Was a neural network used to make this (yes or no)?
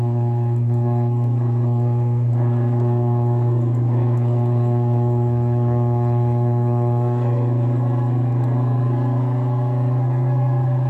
yes